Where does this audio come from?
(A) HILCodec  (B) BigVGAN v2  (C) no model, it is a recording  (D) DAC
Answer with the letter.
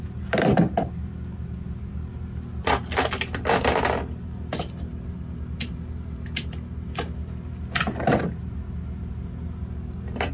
C